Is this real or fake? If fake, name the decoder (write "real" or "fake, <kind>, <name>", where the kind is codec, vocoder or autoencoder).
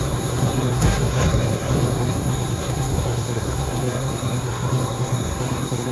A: fake, codec, SNAC